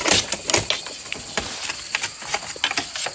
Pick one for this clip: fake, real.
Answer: real